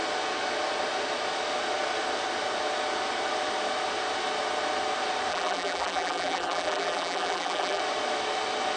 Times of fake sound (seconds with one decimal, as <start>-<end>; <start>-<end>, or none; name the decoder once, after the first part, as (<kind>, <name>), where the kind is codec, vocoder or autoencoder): 5.3-7.8 (vocoder, BigVGAN v2)